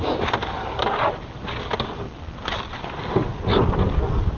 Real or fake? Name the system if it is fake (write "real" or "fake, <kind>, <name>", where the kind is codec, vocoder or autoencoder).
fake, vocoder, BigVGAN v2